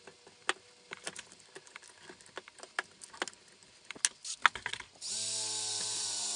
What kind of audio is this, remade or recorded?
recorded